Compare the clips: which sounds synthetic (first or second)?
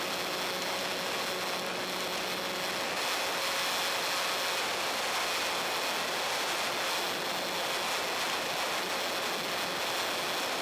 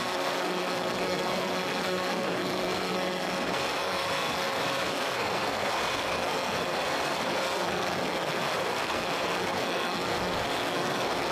second